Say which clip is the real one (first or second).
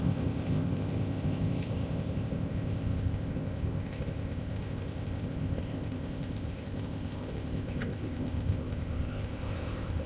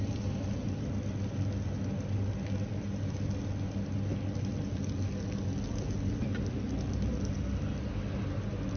second